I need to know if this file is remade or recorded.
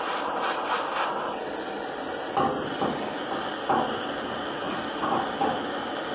recorded